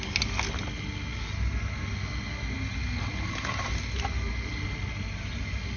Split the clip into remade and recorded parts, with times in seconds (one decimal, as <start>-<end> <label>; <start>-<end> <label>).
0.0-5.8 recorded